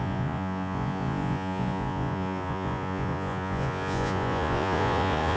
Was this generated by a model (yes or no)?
yes